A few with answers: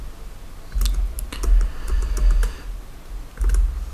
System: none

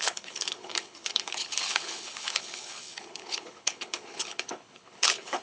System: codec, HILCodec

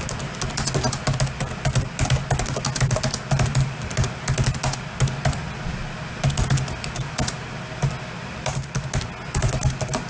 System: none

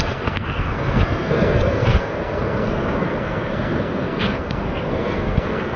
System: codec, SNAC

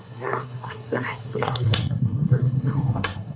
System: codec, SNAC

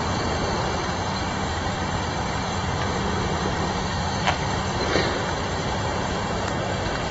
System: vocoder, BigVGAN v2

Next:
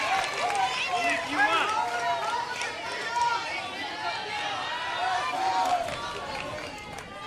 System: none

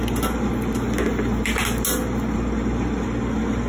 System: none